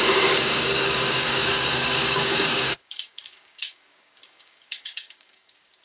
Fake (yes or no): yes